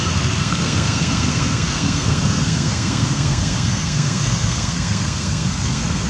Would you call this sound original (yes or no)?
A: no